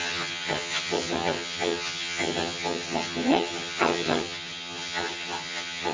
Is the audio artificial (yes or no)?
yes